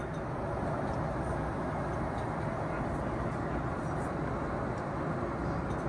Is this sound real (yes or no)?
yes